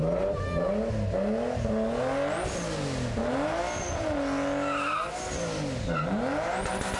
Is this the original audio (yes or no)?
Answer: yes